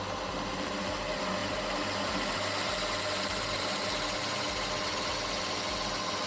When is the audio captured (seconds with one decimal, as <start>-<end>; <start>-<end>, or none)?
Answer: 0.0-6.3